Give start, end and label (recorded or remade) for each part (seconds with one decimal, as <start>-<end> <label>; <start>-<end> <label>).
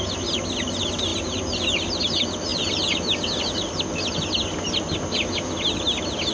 0.0-6.3 recorded